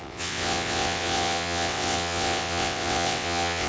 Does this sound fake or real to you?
fake